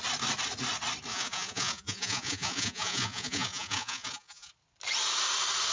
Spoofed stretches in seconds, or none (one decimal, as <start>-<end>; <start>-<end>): 1.1-4.5

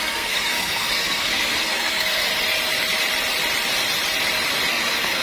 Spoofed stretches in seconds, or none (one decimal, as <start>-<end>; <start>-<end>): 0.0-2.3; 4.7-5.2

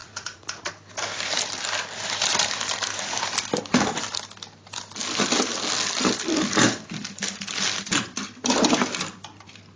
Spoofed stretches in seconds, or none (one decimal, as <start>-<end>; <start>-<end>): 0.0-0.7

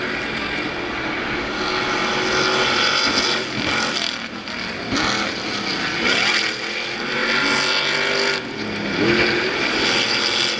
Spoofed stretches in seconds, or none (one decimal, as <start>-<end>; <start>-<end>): none

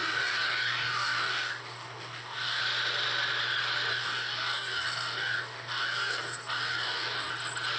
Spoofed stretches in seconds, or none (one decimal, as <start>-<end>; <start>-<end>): 0.0-2.6; 3.9-7.3